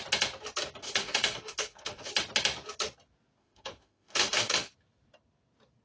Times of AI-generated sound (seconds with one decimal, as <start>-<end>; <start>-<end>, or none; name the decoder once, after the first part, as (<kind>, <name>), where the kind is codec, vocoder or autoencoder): 0.8-2.1 (autoencoder, DAC-VAE); 3.4-4.7